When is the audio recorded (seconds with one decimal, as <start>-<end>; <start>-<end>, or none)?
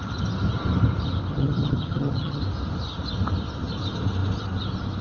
0.0-1.3; 2.4-5.0